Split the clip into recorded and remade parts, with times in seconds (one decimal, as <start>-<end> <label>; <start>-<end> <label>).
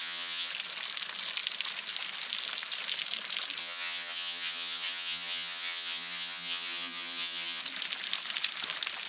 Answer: 0.0-0.5 remade; 0.5-3.6 recorded; 3.6-7.6 remade; 7.6-9.1 recorded